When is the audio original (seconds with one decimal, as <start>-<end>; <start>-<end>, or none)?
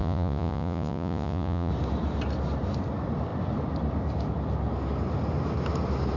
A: 1.7-6.2